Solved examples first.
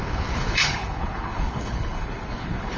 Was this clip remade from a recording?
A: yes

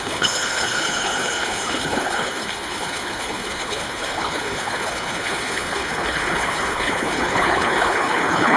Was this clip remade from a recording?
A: yes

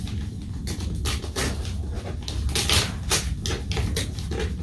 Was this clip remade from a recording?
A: no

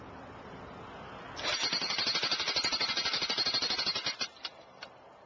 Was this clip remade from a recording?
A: no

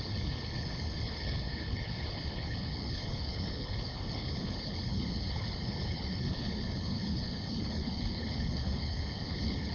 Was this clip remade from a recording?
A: yes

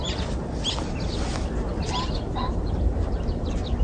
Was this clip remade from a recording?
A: no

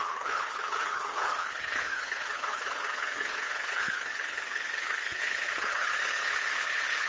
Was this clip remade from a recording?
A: yes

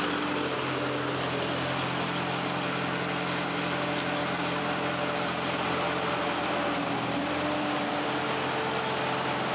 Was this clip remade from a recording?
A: no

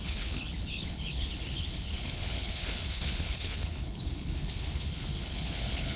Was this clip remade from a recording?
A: yes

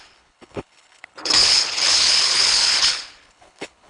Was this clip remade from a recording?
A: yes